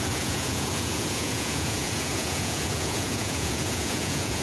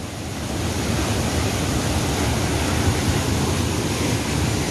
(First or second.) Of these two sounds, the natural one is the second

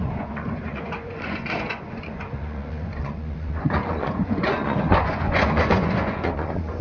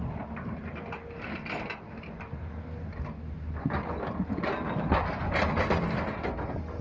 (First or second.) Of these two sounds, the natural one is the second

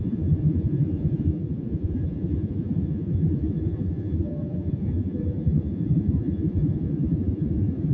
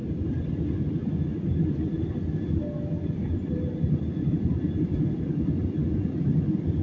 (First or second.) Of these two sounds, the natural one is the second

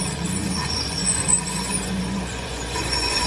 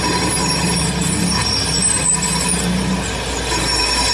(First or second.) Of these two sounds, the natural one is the second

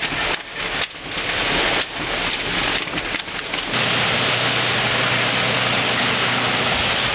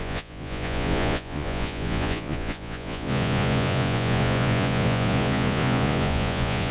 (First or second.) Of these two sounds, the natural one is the first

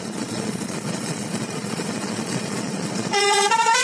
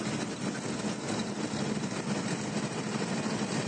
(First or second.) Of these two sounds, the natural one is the second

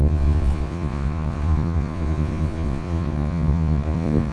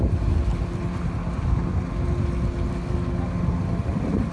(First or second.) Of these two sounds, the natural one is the second